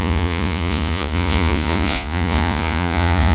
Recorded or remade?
remade